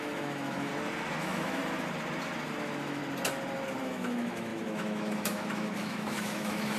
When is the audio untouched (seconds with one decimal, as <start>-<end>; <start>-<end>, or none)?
0.7-1.2; 1.6-2.6; 3.0-3.8